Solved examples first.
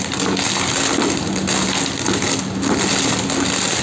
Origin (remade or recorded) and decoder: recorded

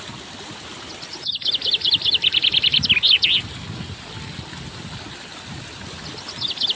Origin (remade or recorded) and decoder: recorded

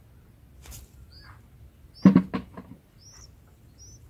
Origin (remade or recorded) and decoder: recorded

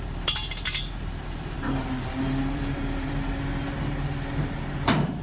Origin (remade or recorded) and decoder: remade, vocoder, BigVGAN v2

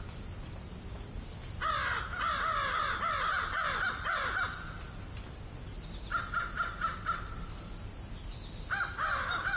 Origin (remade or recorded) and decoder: recorded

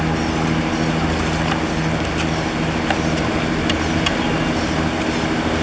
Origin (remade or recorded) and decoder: recorded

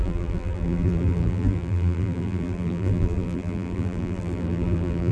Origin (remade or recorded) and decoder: remade, vocoder, BigVGAN v2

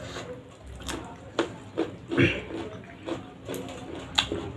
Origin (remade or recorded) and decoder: recorded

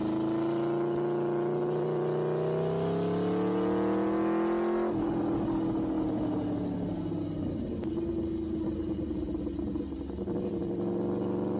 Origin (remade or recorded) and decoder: recorded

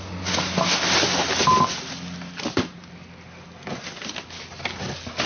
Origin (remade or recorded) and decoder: recorded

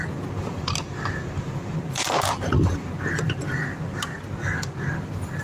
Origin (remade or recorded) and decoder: recorded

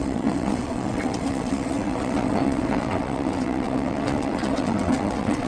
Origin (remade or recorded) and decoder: remade, vocoder, WaveNeXt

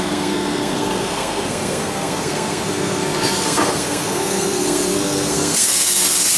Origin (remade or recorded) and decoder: remade, codec, SNAC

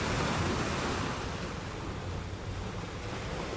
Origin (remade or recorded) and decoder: recorded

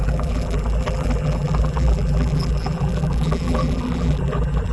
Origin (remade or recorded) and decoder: remade, vocoder, BigVGAN v2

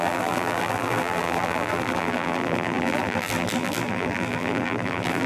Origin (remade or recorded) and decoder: remade, vocoder, BigVGAN v2